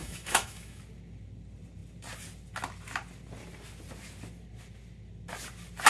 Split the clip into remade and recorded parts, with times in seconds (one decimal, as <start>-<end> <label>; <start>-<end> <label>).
0.0-0.8 remade; 0.8-5.9 recorded